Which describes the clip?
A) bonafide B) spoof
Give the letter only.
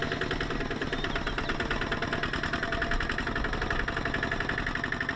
A